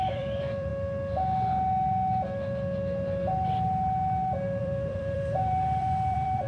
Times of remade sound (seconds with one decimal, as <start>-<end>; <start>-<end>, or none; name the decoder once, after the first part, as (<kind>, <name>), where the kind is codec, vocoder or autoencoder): 0.0-0.7 (vocoder, BigVGAN v2); 4.6-6.5

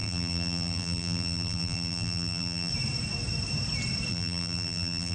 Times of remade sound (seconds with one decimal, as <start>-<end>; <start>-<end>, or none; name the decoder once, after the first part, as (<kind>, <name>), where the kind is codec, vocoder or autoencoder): 0.0-2.7 (vocoder, BigVGAN v2); 4.1-5.1